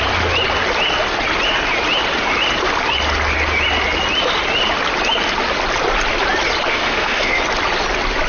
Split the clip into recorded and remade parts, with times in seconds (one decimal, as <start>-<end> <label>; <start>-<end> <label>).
0.0-6.7 recorded; 6.7-7.4 remade; 7.4-8.3 recorded